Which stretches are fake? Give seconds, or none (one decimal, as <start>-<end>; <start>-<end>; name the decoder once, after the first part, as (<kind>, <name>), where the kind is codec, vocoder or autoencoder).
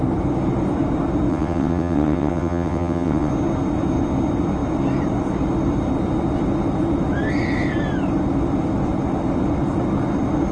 1.3-3.3 (vocoder, WaveNeXt)